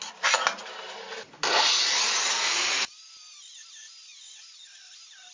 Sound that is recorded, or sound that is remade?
recorded